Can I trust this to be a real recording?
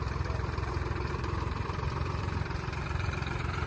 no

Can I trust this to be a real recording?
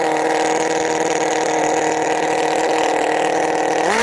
yes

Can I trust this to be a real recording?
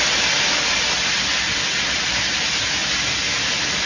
yes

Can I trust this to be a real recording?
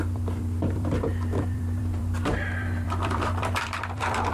no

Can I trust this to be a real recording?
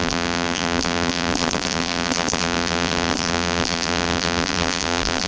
no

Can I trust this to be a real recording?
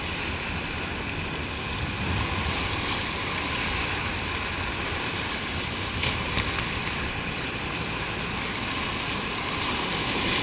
yes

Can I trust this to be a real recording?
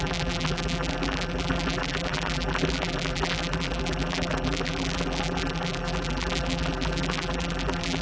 no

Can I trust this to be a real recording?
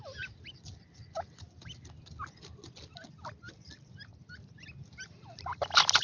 yes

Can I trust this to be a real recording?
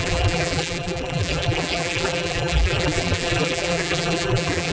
no